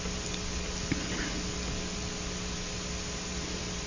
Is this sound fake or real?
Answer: real